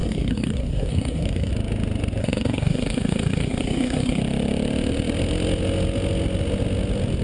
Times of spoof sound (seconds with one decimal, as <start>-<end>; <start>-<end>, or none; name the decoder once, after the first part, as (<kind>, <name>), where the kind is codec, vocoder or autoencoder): 0.0-1.5 (codec, SNAC); 2.2-4.2